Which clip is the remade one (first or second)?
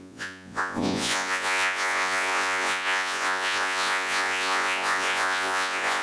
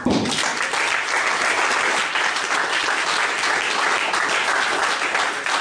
first